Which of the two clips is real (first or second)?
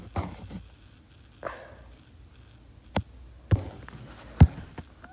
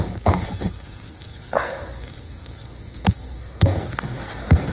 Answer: first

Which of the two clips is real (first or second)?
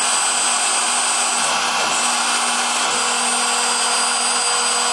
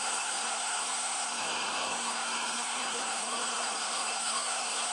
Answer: first